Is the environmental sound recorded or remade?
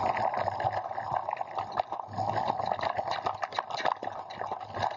recorded